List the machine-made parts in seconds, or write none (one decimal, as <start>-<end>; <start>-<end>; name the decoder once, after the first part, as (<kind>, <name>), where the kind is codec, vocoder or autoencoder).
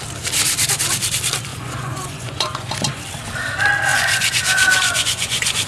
1.5-3.0 (vocoder, Vocos); 3.9-5.7